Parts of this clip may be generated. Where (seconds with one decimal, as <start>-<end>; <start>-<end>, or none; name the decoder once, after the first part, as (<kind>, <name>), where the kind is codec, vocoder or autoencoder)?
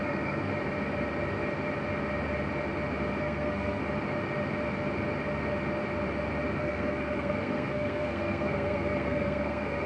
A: 0.0-0.5 (codec, SNAC); 3.2-3.8; 6.6-9.9